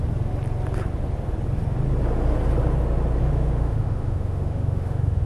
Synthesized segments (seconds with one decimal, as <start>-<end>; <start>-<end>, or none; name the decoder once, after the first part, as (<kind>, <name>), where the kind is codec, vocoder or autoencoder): 3.2-5.3 (autoencoder, DAC-VAE)